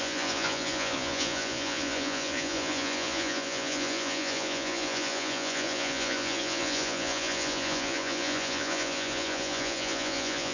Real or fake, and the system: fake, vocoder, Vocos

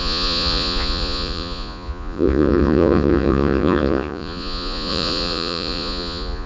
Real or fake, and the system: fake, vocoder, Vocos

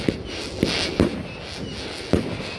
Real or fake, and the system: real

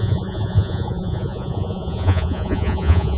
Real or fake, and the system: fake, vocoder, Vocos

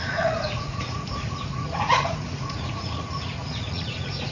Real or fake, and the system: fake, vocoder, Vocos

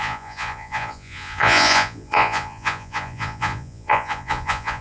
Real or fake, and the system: fake, vocoder, Vocos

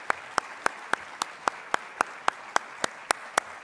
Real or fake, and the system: real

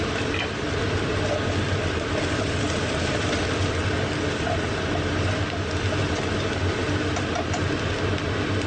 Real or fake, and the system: real